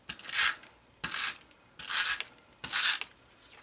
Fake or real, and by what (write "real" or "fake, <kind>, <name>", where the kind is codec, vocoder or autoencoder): real